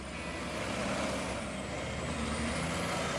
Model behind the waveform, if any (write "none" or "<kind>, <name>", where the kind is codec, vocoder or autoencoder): none